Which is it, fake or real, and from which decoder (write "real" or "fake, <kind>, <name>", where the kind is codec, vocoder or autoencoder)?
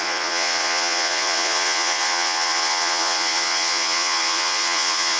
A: fake, vocoder, Vocos